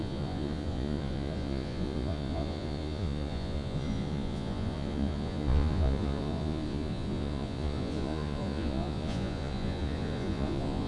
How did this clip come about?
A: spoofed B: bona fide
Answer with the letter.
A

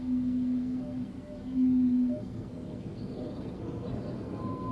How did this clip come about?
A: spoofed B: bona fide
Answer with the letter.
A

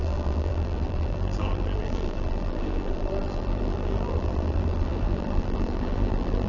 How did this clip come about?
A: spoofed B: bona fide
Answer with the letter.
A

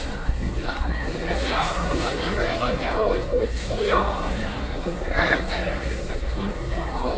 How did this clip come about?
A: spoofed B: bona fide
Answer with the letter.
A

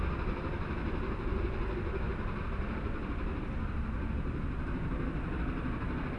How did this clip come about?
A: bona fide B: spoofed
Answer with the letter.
A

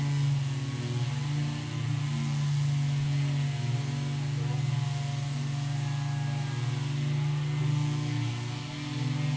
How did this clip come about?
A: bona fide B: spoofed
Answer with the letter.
A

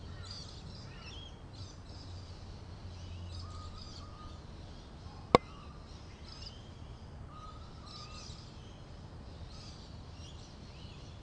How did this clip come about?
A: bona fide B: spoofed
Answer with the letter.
A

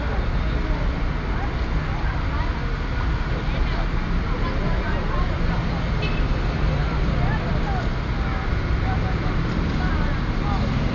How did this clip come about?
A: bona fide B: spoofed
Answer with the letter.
A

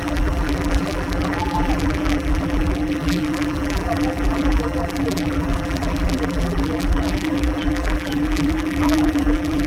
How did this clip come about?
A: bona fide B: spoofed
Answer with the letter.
B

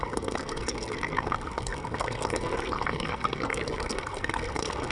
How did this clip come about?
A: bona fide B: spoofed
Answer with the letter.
B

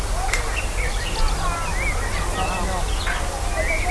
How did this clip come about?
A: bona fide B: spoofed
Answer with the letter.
A